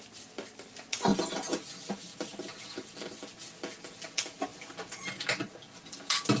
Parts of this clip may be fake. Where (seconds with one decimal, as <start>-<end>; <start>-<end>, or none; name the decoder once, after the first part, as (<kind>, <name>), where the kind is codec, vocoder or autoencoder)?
1.1-1.7 (vocoder, BigVGAN v2); 2.1-3.1